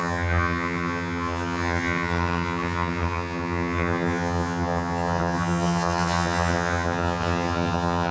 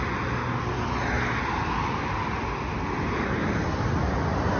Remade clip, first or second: first